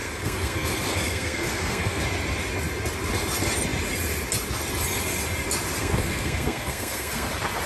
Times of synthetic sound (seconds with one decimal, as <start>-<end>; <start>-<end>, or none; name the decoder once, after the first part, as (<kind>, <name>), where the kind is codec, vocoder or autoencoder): 0.0-2.0 (codec, SNAC); 5.8-7.3